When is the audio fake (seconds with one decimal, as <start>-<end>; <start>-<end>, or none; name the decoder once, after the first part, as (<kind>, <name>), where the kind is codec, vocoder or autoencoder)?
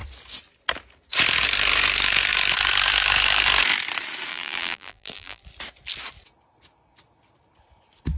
4.3-5.4 (vocoder, BigVGAN v2)